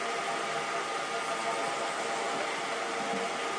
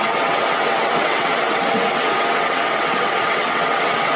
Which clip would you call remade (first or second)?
second